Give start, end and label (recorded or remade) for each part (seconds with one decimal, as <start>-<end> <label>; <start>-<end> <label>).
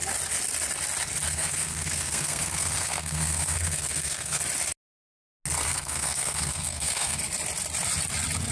0.0-1.3 recorded; 1.3-4.4 remade; 4.4-5.7 recorded; 5.7-7.2 remade; 7.2-8.5 recorded